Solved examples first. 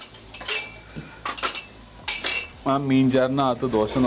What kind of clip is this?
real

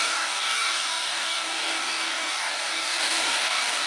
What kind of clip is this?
fake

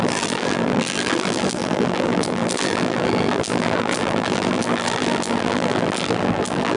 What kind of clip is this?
fake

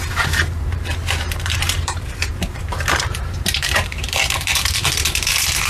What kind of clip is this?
fake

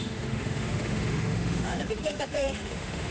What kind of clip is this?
fake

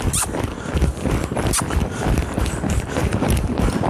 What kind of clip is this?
fake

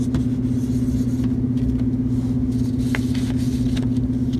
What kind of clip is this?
real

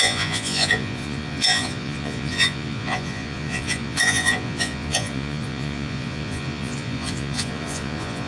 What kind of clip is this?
fake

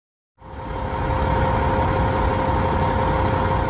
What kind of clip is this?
real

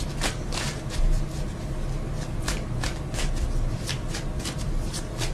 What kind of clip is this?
real